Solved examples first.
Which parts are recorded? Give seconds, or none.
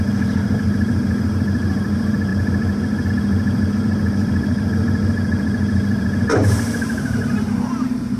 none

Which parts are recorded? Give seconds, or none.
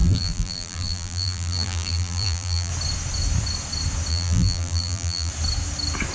2.7-4.1; 5.3-6.1